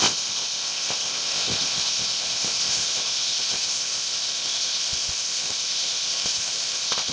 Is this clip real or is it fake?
fake